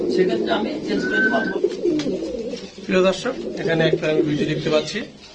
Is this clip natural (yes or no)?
yes